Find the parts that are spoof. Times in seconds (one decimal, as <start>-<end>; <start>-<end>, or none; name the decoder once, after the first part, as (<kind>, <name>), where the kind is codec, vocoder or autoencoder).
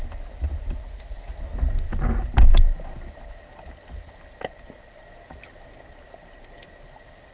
0.8-1.4 (vocoder, Vocos)